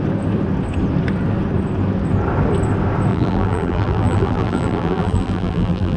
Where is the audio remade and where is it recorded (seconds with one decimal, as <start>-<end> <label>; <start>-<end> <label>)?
0.0-3.1 recorded; 3.1-6.0 remade